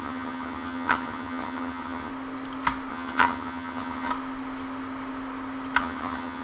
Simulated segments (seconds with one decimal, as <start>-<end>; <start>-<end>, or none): 0.0-2.1; 2.9-4.1; 5.8-6.4